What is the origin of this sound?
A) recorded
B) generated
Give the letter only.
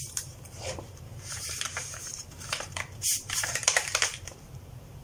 B